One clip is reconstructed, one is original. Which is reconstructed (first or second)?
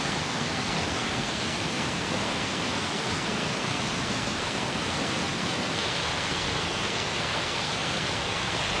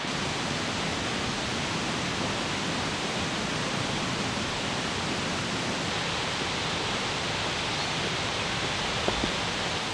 first